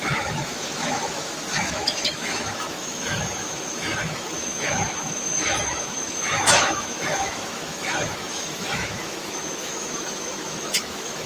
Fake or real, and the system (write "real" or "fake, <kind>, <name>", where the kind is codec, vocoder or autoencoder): fake, autoencoder, DAC-VAE